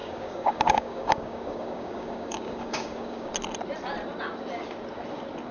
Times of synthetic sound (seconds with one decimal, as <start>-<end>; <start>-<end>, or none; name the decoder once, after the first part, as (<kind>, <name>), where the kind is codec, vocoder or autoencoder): 0.0-3.3 (codec, DAC)